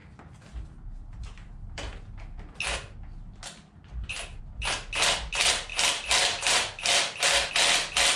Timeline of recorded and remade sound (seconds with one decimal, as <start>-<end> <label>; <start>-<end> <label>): 0.0-8.2 recorded